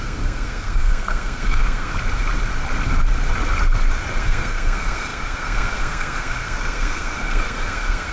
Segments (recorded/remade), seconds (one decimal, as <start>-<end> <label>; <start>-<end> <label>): 0.0-1.9 remade; 1.9-4.2 recorded; 4.2-8.1 remade